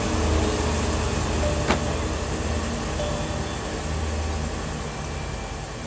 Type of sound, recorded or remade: recorded